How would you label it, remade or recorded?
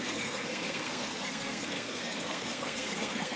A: remade